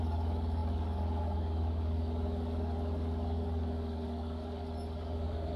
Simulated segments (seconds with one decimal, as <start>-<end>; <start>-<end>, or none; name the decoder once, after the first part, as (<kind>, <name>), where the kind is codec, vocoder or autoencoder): 0.0-5.6 (codec, DAC)